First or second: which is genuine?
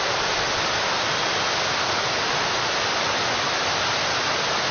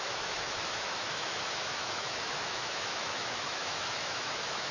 first